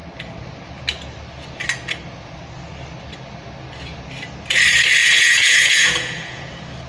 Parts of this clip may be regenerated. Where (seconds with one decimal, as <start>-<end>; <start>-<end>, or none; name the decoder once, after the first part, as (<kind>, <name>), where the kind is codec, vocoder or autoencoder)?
5.0-6.5 (vocoder, Vocos)